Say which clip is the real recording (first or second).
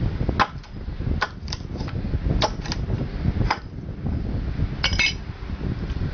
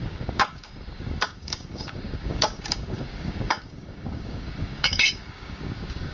first